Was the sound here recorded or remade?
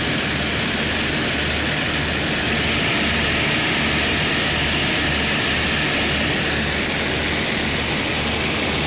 recorded